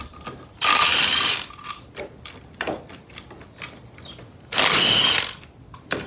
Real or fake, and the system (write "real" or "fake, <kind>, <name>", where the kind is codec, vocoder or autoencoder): real